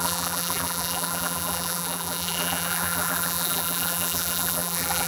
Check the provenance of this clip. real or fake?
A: fake